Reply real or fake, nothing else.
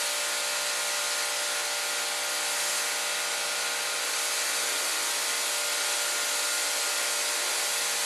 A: real